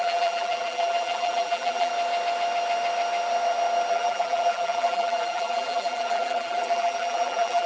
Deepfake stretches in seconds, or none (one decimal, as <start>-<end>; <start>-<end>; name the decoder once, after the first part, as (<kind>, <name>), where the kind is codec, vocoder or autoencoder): 0.0-1.9 (vocoder, BigVGAN v2); 3.9-7.7